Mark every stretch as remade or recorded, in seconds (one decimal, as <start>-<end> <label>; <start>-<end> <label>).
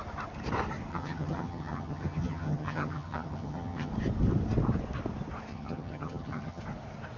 0.0-0.9 recorded; 0.9-3.9 remade; 3.9-5.5 recorded; 5.5-6.6 remade; 6.6-7.2 recorded